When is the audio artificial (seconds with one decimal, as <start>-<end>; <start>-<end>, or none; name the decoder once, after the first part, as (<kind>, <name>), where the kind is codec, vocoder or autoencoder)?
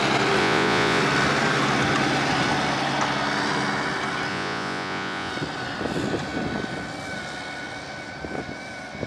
0.4-1.0 (vocoder, Vocos); 4.3-5.3